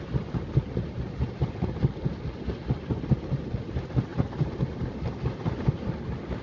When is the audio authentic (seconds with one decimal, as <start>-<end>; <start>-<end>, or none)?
0.0-4.1; 5.9-6.4